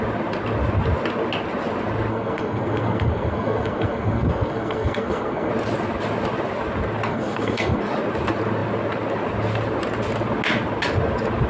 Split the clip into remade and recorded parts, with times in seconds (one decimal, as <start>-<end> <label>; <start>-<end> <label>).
0.0-2.1 recorded; 2.1-5.5 remade; 5.5-7.1 recorded; 7.1-7.8 remade; 7.8-11.5 recorded